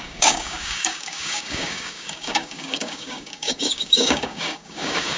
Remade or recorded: remade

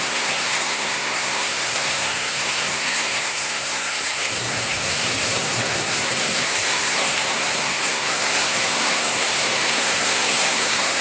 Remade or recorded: remade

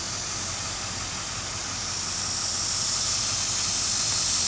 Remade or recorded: recorded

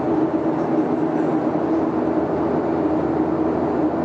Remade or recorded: recorded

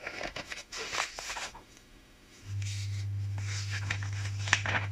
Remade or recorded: remade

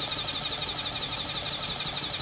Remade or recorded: recorded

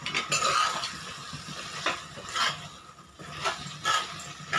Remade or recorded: recorded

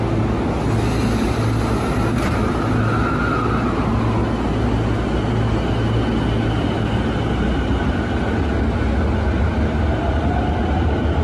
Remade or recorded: recorded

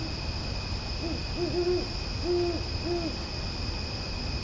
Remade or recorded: recorded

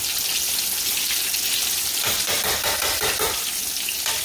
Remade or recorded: recorded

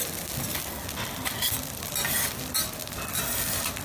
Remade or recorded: recorded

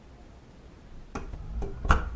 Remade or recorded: recorded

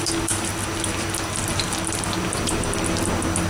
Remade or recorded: recorded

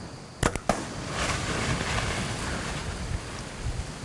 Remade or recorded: recorded